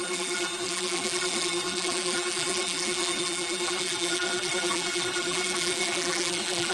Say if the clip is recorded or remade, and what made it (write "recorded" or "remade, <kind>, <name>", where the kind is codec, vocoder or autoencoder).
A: remade, vocoder, BigVGAN v2